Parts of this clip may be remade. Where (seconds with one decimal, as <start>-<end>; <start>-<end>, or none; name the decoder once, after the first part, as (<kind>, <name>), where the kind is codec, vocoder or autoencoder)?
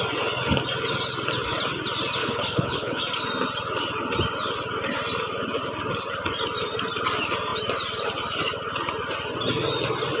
2.2-3.0 (codec, HILCodec)